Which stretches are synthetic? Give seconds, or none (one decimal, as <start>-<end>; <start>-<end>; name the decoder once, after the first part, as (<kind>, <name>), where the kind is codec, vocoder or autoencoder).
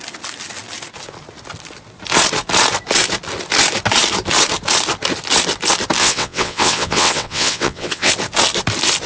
6.0-8.1 (vocoder, WaveNeXt)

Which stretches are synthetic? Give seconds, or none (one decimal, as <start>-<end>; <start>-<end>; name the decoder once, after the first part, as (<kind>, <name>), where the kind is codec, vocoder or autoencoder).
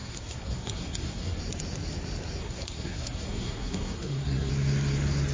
0.0-1.4 (codec, SNAC); 2.4-4.5